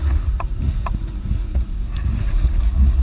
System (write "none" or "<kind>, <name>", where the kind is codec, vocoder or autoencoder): vocoder, Vocos